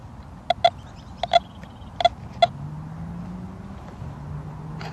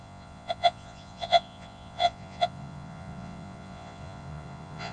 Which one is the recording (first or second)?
first